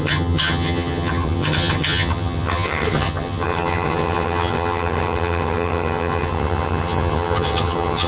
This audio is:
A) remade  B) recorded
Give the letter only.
A